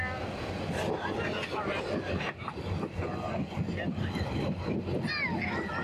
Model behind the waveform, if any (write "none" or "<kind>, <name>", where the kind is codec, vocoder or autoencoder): none